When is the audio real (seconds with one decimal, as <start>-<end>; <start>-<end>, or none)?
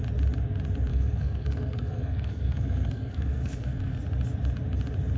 0.0-0.9; 4.0-5.2